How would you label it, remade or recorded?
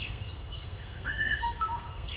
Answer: remade